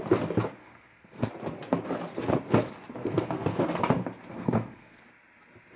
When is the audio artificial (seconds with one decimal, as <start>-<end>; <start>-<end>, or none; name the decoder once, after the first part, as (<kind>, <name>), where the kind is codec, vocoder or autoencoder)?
0.6-1.3 (codec, SNAC); 3.0-3.8; 4.3-5.0